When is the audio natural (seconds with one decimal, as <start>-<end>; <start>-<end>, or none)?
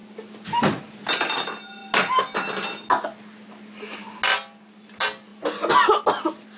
0.0-6.6